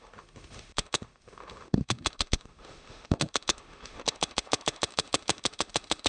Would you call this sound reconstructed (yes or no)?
yes